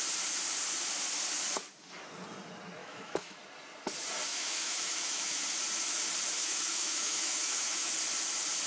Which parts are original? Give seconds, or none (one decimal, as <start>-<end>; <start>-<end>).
0.0-2.8; 3.4-4.3; 5.4-6.4; 7.9-8.7

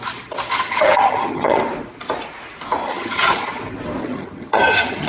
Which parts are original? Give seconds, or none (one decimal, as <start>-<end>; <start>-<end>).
0.0-0.5; 1.6-2.8; 3.6-4.0

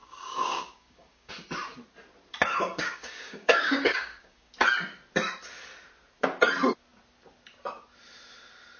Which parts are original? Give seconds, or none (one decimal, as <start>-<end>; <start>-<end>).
1.3-2.5; 4.5-8.8

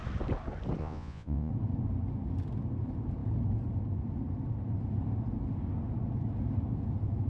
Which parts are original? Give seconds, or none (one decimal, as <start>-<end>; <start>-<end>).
0.0-0.8; 1.5-7.3

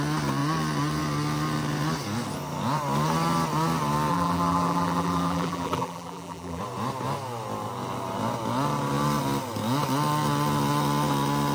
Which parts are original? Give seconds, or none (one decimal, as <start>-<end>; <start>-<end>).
0.0-4.1; 6.6-11.5

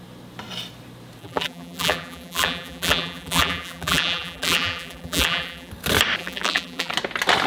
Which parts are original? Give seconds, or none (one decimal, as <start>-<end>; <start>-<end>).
0.0-1.2; 5.7-6.2; 6.9-7.5

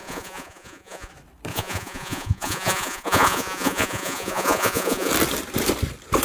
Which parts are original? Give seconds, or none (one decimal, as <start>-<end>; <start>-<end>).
1.1-1.5; 5.1-6.2

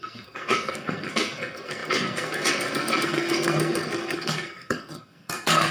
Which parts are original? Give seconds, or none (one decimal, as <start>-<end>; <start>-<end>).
none